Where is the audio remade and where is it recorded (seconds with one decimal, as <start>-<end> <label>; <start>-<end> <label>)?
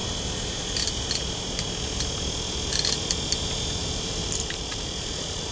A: 0.0-3.8 recorded; 3.8-5.5 remade